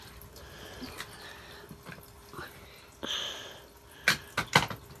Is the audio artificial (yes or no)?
no